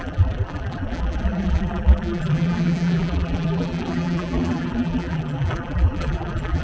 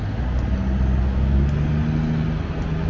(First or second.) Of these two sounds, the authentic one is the second